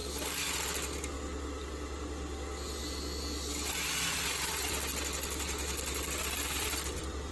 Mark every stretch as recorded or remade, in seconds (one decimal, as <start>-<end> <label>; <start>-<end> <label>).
0.0-4.1 recorded; 4.1-4.9 remade; 4.9-6.2 recorded; 6.2-7.3 remade